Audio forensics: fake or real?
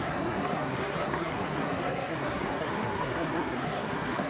fake